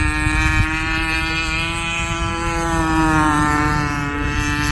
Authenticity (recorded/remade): recorded